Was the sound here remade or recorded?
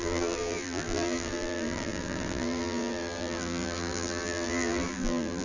remade